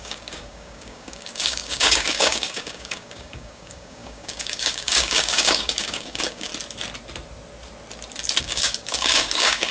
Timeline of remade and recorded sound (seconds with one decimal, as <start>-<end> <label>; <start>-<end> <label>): 0.0-6.5 remade; 6.5-8.4 recorded; 8.4-9.7 remade